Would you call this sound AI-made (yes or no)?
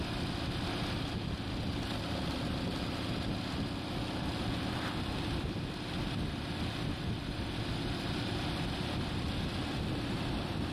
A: no